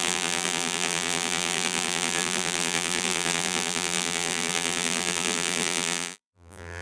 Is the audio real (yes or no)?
no